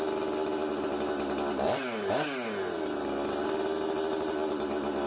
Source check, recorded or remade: recorded